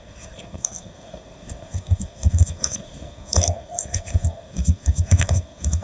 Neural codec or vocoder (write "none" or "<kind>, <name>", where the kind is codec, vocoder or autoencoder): codec, SNAC